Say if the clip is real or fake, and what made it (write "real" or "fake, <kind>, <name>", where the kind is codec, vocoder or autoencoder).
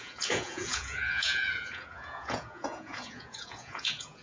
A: fake, vocoder, Vocos